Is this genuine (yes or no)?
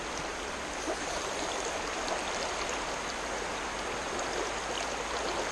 yes